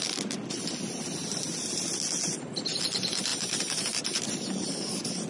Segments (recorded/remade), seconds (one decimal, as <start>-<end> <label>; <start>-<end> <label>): 0.0-3.3 recorded; 3.3-4.2 remade; 4.2-5.3 recorded